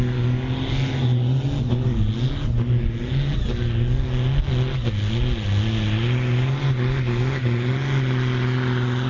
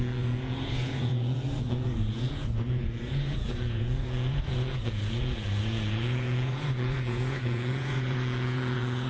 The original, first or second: first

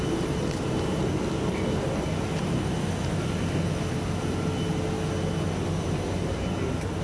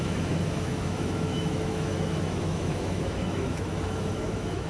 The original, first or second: first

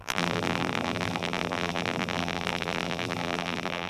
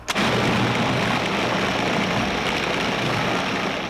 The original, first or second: second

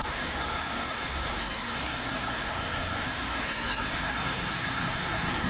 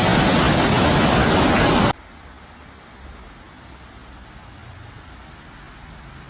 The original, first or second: second